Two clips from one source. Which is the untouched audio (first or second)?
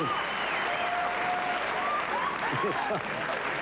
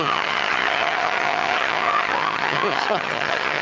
first